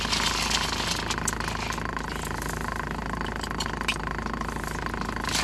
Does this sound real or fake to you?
real